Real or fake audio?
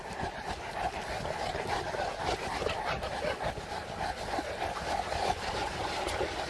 real